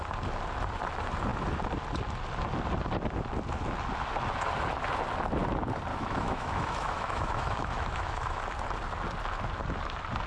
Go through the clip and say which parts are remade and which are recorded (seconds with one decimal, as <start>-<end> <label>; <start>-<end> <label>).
0.0-5.9 recorded; 5.9-8.4 remade; 8.4-10.3 recorded